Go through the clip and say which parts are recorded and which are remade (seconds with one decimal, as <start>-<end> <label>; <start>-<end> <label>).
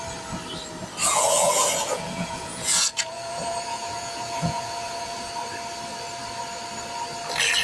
0.0-1.0 recorded; 1.0-5.3 remade; 5.3-7.6 recorded